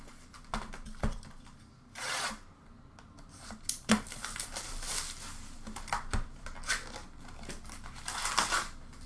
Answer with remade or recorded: recorded